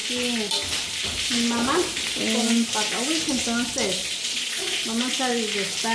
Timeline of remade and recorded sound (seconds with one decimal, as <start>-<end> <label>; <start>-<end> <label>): 0.0-4.0 recorded; 4.0-4.8 remade; 4.8-5.9 recorded